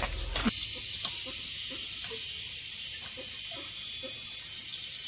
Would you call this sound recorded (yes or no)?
yes